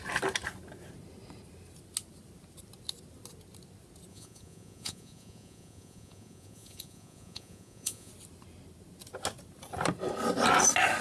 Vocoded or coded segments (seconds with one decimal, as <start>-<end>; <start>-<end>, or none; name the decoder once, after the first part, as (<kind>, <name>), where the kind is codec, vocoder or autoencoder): 4.1-8.1 (vocoder, Vocos)